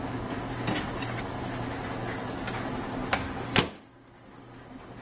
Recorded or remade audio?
recorded